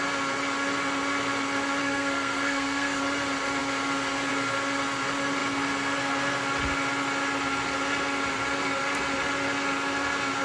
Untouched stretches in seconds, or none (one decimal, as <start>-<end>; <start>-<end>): 0.0-1.8; 3.0-10.4